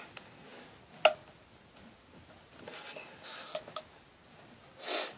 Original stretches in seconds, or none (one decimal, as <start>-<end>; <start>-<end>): 0.0-5.2